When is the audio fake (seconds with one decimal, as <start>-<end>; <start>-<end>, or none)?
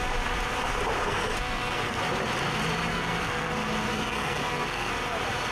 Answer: 1.0-2.0; 2.9-3.5; 3.9-4.9